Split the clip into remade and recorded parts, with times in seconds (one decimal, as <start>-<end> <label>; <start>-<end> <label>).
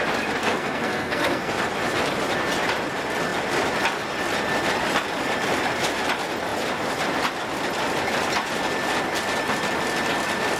0.0-0.4 recorded; 0.4-1.6 remade; 1.6-10.6 recorded